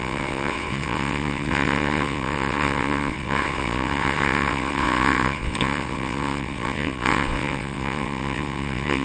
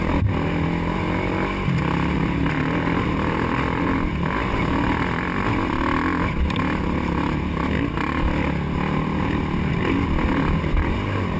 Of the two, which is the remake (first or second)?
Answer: first